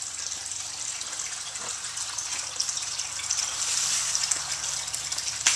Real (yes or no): yes